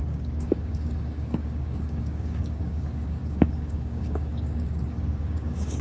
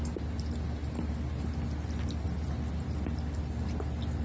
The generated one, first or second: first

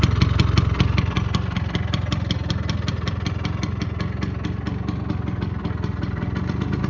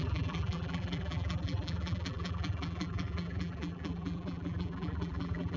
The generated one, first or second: second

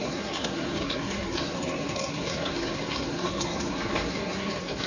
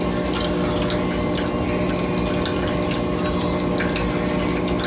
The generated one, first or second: first